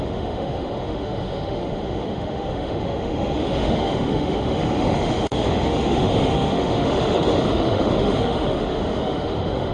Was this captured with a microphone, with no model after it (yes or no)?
no